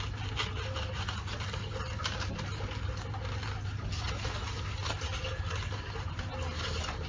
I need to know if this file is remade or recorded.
recorded